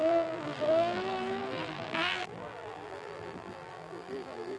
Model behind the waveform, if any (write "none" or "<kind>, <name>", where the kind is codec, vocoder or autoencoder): vocoder, BigVGAN v2